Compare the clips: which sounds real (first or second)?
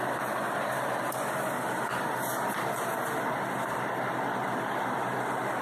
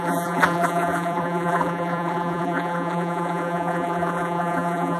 first